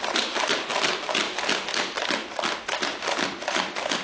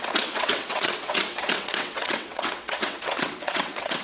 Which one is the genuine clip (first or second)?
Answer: first